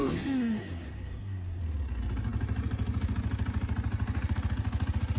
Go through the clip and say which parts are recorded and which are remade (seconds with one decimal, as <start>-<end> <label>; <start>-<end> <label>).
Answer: 0.0-1.6 remade; 1.6-5.2 recorded